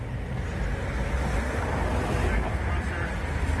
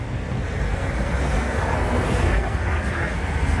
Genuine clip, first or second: first